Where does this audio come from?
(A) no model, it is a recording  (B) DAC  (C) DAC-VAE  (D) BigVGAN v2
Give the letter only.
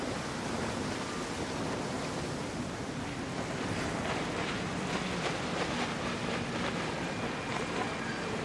A